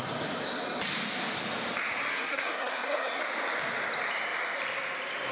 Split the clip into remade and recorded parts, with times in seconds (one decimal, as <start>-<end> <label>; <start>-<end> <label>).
0.0-2.1 recorded; 2.1-3.2 remade; 3.2-5.3 recorded